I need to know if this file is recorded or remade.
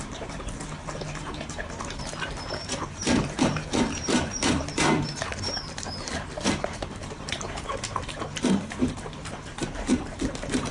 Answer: remade